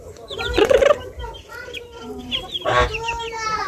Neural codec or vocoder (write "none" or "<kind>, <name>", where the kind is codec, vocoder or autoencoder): vocoder, BigVGAN v2